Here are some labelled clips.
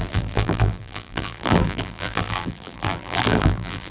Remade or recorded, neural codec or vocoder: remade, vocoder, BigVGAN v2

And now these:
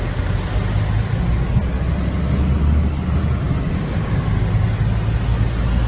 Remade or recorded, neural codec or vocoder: recorded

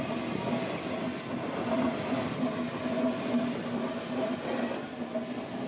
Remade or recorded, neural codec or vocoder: recorded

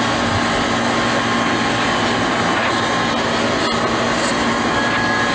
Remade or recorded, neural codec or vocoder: recorded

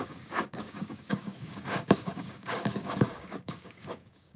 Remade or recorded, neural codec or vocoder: remade, codec, DAC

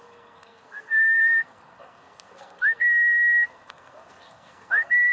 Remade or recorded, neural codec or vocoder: remade, codec, SNAC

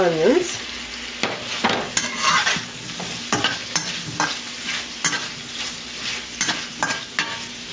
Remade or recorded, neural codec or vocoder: recorded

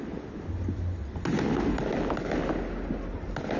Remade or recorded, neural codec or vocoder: recorded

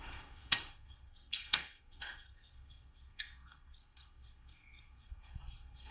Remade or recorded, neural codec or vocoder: remade, codec, SNAC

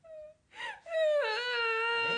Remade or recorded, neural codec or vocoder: recorded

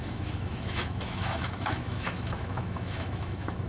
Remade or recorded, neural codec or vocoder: remade, autoencoder, DAC-VAE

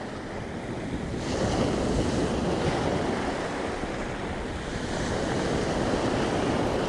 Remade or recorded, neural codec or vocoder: recorded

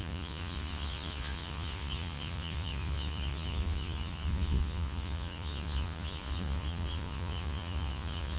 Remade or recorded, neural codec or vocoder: remade, vocoder, Vocos